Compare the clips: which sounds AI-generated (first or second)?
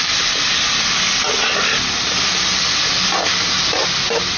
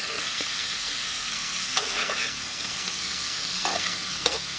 second